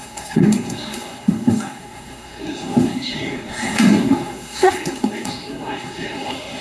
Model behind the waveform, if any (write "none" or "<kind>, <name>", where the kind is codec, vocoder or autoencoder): codec, SNAC